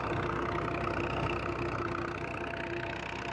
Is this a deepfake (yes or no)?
no